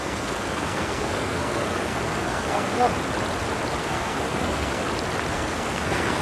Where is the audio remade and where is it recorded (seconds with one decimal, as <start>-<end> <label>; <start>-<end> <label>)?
0.0-2.9 remade; 2.9-3.8 recorded; 3.8-4.8 remade; 4.8-5.3 recorded; 5.3-6.2 remade